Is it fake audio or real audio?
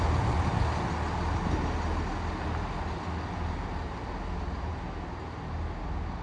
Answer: real